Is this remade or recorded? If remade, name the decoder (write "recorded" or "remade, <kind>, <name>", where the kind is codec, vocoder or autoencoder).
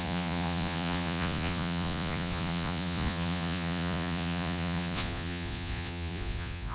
remade, vocoder, Vocos